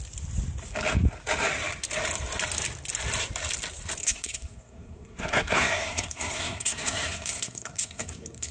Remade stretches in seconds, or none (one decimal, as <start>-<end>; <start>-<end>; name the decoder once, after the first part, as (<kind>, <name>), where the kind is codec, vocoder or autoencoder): 4.0-8.5 (codec, SNAC)